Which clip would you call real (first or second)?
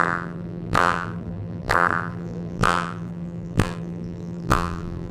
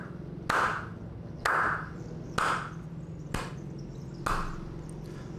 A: second